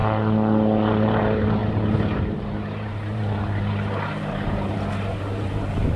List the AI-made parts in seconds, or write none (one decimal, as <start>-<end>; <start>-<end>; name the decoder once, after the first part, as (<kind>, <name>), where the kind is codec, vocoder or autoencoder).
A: 0.9-6.0 (vocoder, BigVGAN v2)